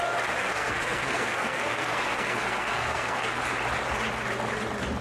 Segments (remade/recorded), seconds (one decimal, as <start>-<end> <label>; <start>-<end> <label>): 0.0-0.4 recorded; 0.4-3.4 remade; 3.4-5.0 recorded